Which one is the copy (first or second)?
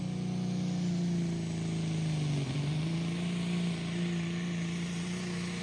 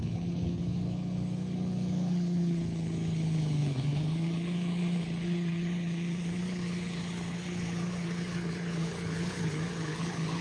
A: second